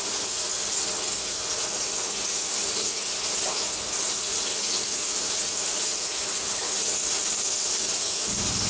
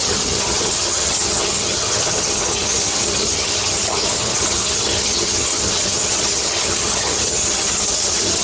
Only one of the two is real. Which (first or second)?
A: first